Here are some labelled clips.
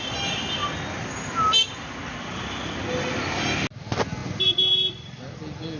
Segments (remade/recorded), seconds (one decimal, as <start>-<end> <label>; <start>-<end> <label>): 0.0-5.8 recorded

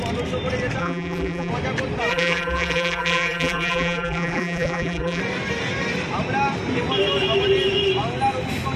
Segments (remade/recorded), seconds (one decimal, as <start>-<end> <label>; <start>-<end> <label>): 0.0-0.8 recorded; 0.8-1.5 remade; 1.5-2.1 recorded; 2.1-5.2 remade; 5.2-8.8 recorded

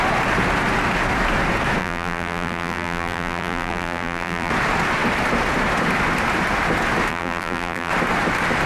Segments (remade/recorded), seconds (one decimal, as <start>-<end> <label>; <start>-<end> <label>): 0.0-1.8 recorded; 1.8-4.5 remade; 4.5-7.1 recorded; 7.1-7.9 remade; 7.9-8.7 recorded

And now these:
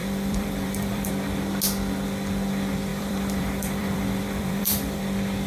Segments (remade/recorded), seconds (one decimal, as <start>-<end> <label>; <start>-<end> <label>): 0.0-1.1 remade; 1.1-2.9 recorded; 2.9-5.0 remade; 5.0-5.5 recorded

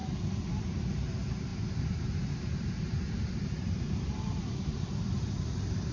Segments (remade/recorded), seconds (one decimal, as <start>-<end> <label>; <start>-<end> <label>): 0.0-1.5 recorded; 1.5-5.0 remade; 5.0-5.9 recorded